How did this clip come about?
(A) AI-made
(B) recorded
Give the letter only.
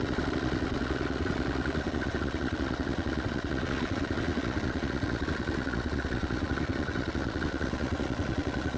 A